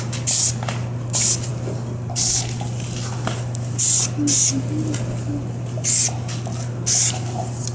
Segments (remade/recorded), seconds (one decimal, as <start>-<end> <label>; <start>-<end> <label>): 0.0-7.7 recorded